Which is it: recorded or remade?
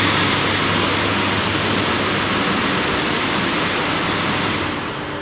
recorded